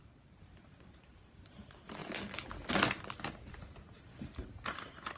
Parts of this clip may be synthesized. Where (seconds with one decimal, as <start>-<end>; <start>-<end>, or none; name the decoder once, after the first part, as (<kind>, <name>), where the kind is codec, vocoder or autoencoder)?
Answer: 0.0-2.0 (vocoder, BigVGAN v2); 3.3-4.1